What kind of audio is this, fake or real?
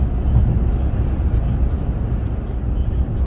real